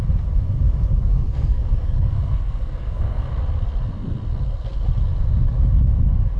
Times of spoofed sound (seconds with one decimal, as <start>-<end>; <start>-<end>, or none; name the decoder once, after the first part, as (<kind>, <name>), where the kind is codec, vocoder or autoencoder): 1.1-3.2 (codec, SNAC)